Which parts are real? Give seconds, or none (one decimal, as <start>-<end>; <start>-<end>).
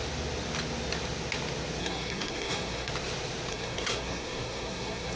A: 0.0-1.8; 2.9-3.5